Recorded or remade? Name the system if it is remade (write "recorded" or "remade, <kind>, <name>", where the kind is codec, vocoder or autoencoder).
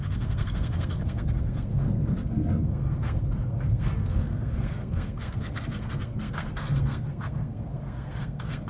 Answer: remade, codec, SNAC